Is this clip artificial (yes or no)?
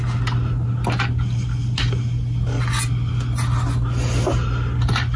no